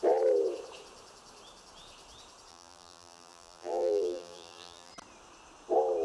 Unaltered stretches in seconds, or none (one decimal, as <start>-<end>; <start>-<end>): 0.0-2.5; 4.9-6.0

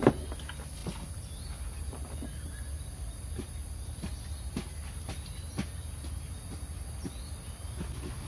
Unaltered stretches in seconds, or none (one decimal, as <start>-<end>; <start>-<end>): 0.0-8.3

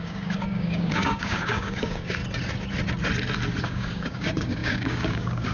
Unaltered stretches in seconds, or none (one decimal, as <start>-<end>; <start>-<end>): 2.2-3.6

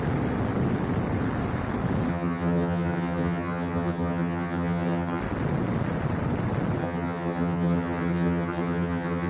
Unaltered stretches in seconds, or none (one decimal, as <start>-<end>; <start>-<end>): 0.0-2.1; 5.2-6.8

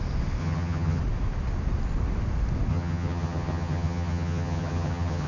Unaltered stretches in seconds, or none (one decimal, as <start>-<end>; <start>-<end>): 0.0-0.4; 1.0-2.7

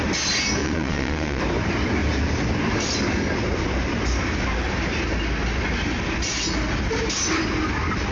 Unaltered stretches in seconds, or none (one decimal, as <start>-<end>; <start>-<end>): 0.0-0.6; 1.4-8.1

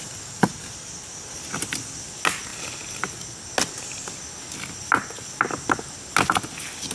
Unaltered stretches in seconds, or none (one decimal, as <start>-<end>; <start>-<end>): 0.0-6.9

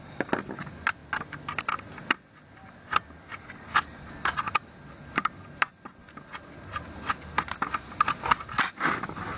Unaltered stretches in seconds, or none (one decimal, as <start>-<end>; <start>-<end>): 0.0-9.4